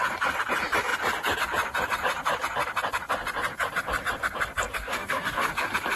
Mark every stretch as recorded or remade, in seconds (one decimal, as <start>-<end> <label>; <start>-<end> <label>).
0.0-4.8 recorded; 4.8-5.5 remade; 5.5-6.0 recorded